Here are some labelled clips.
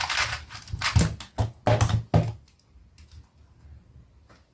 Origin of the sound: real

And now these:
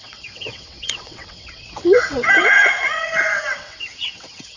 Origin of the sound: fake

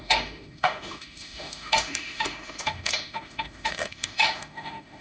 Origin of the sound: fake